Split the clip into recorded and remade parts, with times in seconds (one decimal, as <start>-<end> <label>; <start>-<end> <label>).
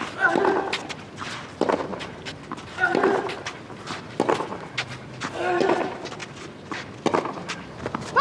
0.0-8.2 recorded